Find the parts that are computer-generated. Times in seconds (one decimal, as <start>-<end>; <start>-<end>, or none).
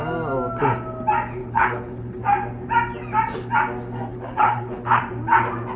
1.4-2.2; 4.1-5.0